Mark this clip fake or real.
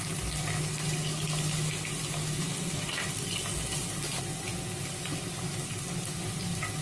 real